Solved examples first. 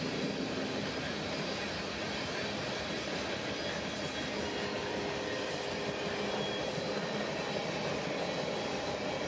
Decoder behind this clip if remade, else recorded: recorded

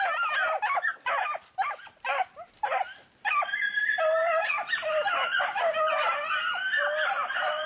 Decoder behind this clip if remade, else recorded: recorded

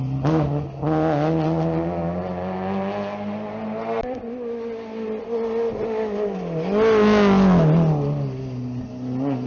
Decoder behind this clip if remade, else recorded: recorded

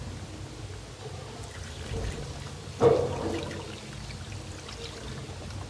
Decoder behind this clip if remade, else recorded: recorded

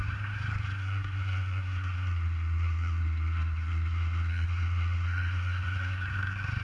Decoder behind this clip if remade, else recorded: remade, codec, SNAC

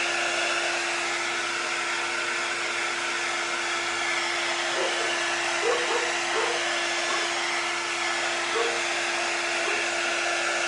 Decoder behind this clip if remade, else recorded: recorded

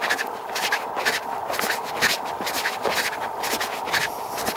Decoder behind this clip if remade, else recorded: recorded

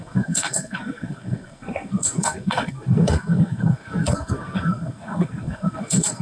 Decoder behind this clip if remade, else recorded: remade, codec, SNAC